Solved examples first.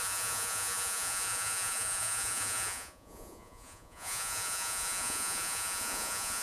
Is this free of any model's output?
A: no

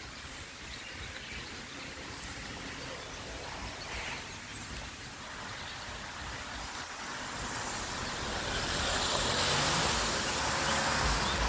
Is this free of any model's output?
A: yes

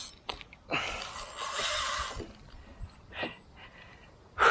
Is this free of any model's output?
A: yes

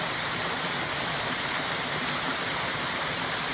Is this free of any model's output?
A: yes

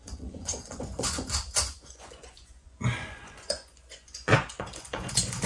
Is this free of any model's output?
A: no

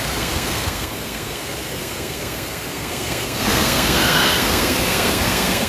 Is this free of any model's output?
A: no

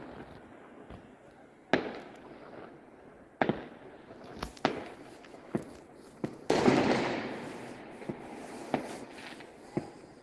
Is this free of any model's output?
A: yes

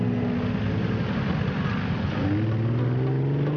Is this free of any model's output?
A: yes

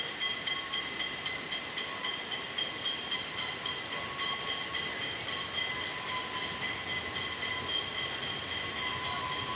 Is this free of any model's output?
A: yes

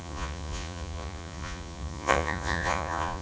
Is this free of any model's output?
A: no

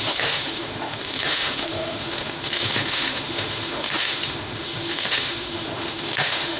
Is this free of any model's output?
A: no